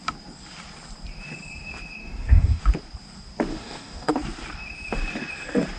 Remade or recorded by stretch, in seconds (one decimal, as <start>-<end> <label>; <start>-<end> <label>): 0.0-2.0 recorded; 2.0-2.6 remade; 2.6-3.5 recorded; 3.5-4.1 remade; 4.1-5.8 recorded